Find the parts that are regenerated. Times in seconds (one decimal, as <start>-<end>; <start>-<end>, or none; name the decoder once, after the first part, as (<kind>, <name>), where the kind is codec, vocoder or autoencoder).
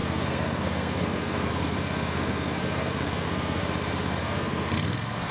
0.0-3.6 (codec, SNAC); 4.2-5.3